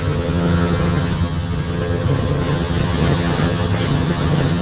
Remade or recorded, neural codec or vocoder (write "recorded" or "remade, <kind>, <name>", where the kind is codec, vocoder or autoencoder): remade, vocoder, HiFi-GAN